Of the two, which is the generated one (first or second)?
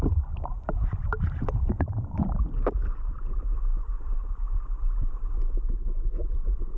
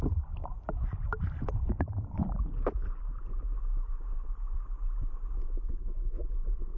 first